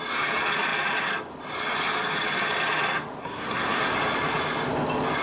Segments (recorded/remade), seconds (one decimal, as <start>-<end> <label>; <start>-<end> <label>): 0.0-3.2 recorded; 3.2-3.9 remade; 3.9-5.2 recorded